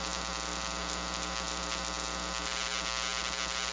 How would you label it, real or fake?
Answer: real